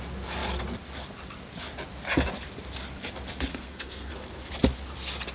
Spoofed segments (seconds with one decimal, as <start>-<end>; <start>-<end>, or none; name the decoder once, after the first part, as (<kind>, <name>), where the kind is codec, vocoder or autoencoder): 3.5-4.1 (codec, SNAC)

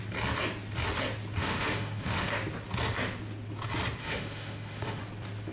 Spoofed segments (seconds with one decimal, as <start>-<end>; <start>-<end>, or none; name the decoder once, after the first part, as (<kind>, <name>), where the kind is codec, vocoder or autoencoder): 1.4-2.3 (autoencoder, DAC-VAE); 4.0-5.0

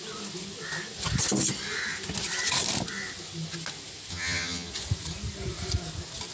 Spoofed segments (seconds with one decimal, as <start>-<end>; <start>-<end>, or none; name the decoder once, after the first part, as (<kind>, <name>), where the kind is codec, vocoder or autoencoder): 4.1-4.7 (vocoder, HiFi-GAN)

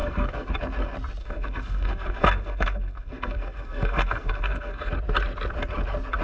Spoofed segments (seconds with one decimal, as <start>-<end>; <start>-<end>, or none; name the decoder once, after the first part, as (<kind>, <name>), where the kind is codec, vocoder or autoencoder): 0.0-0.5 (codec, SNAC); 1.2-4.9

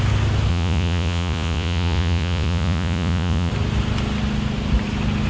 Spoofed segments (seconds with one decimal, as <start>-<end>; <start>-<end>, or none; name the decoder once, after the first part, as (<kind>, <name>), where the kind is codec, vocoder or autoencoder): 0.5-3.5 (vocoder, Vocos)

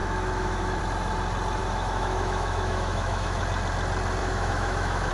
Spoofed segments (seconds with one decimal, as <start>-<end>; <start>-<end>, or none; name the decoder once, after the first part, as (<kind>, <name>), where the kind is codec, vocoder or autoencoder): 0.0-0.8 (autoencoder, DAC-VAE); 1.6-3.4; 4.2-5.1

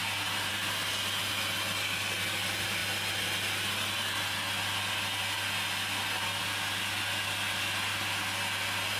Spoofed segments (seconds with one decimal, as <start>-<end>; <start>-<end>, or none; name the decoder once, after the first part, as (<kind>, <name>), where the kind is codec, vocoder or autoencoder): none

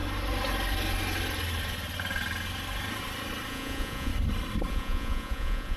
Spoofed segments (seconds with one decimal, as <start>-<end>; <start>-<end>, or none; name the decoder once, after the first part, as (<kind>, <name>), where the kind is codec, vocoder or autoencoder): 3.5-4.1 (vocoder, Vocos); 4.7-5.8